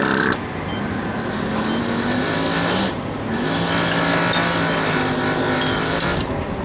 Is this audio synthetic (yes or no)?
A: no